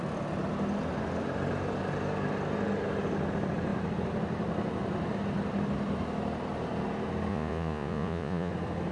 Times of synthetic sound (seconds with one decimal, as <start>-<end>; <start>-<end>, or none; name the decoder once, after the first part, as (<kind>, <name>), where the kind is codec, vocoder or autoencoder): 7.3-8.5 (vocoder, Vocos)